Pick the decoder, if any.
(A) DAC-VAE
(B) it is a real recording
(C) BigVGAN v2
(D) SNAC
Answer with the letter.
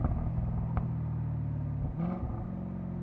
B